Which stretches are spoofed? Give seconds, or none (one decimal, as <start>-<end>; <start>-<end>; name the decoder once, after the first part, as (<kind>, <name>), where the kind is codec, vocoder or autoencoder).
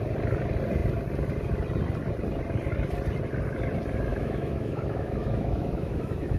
4.1-6.4 (autoencoder, DAC-VAE)